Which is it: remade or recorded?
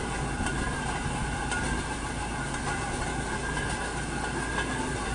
recorded